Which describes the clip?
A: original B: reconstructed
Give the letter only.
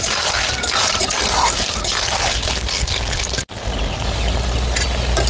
A